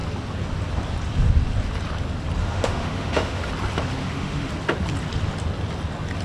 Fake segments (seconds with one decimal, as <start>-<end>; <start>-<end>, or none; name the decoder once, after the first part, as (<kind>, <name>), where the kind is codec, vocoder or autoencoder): 2.4-3.5 (autoencoder, DAC-VAE); 4.0-4.5